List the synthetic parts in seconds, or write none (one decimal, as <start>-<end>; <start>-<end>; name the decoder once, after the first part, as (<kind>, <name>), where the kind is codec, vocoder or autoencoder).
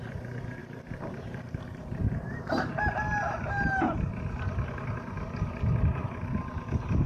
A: 0.6-3.8 (vocoder, BigVGAN v2)